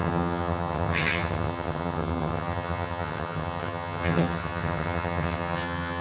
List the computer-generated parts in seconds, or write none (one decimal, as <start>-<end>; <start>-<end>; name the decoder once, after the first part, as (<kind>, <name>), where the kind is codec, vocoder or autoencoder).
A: 0.0-6.0 (vocoder, HiFi-GAN)